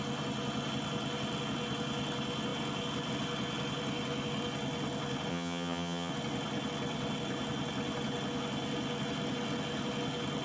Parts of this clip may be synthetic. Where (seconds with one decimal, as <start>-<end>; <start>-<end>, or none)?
5.3-6.1

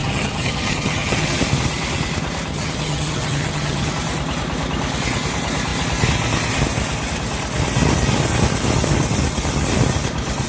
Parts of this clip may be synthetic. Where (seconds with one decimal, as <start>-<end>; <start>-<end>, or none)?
0.0-1.4; 2.5-3.9